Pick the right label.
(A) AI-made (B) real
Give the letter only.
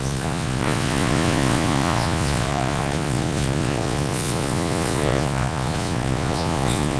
A